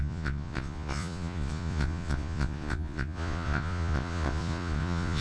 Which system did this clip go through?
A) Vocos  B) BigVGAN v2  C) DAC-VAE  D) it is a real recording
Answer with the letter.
A